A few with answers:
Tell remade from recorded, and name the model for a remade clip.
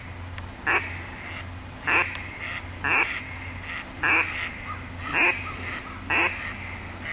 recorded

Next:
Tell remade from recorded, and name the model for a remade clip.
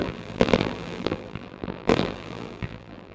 remade, vocoder, BigVGAN v2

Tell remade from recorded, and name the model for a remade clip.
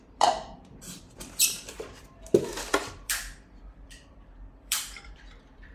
remade, vocoder, BigVGAN v2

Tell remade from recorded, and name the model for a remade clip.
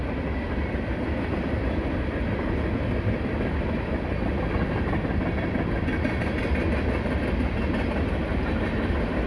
recorded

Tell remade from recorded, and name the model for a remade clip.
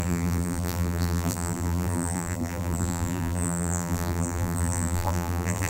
remade, vocoder, BigVGAN v2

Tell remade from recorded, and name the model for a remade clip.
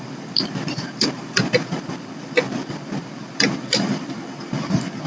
remade, vocoder, BigVGAN v2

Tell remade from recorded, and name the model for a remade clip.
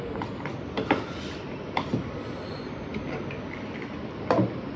recorded